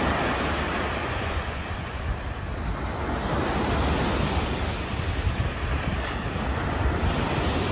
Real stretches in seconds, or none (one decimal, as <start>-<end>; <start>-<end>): 0.0-1.0; 2.0-7.7